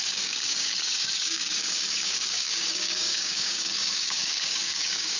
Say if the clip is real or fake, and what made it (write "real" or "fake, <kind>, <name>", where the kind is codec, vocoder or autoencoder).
fake, codec, DAC